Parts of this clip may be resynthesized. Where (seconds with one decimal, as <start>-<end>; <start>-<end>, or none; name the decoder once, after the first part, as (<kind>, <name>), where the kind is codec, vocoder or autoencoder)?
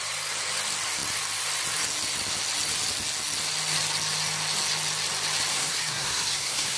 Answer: 5.5-6.8 (codec, SNAC)